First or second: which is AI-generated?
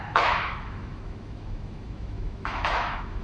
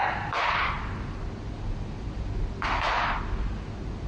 first